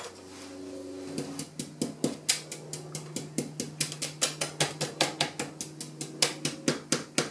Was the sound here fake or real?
real